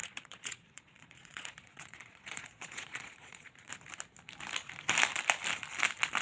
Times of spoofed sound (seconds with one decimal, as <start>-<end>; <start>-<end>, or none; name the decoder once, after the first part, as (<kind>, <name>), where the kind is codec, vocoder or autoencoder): 0.0-3.7 (vocoder, Vocos)